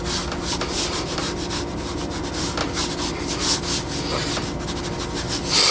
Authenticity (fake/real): real